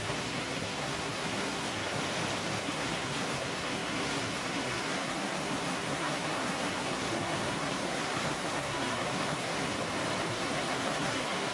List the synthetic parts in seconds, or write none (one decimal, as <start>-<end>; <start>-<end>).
0.0-2.0; 2.6-9.7; 10.3-11.5